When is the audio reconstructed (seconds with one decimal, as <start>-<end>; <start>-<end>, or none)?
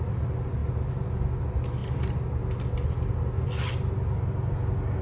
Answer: none